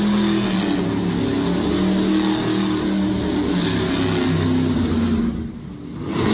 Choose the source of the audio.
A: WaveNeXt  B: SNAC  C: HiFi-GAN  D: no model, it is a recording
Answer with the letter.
D